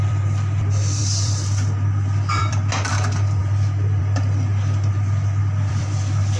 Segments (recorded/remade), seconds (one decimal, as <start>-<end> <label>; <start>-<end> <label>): 0.0-3.4 remade; 3.4-4.0 recorded; 4.0-4.5 remade; 4.5-5.7 recorded; 5.7-6.4 remade